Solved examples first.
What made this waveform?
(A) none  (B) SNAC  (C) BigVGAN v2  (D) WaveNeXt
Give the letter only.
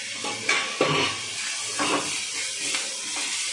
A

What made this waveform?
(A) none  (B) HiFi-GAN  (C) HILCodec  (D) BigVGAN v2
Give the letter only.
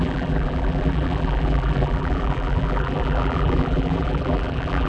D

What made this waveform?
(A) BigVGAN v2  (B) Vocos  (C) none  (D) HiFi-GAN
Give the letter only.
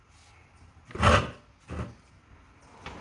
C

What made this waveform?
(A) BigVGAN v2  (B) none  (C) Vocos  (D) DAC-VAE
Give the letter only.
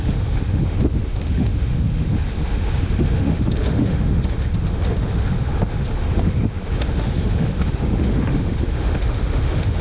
D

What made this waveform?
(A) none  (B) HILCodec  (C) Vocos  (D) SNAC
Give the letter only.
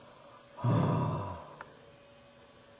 A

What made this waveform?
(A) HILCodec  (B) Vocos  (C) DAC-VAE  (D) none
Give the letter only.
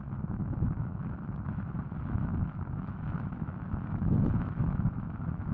C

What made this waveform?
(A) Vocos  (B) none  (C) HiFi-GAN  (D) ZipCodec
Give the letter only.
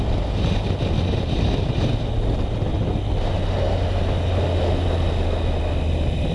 B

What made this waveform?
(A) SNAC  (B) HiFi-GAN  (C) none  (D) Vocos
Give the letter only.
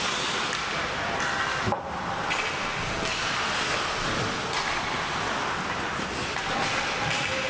C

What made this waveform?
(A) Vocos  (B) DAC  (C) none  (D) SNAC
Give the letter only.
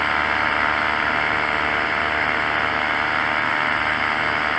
C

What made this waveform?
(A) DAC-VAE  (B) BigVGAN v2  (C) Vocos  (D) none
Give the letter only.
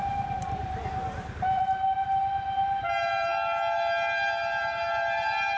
D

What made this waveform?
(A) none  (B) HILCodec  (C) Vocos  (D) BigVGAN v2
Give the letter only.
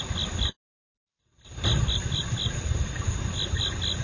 A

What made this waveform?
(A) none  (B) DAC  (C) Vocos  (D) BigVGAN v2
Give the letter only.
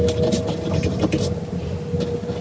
A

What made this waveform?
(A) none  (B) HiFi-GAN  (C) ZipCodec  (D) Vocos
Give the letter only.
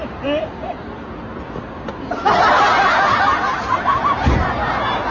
A